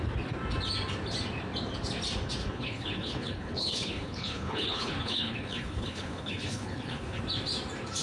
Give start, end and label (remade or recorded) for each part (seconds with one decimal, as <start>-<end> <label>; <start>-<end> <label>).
0.0-2.4 recorded; 2.4-7.2 remade; 7.2-8.0 recorded